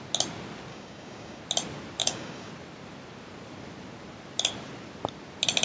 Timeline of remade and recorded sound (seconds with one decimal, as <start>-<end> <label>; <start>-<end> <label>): 0.0-0.7 recorded; 0.7-1.4 remade; 1.4-2.0 recorded; 2.0-2.5 remade; 2.5-5.6 recorded